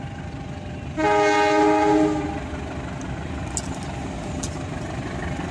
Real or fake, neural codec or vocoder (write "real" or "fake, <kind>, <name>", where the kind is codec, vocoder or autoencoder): real